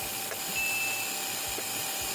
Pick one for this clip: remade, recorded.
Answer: recorded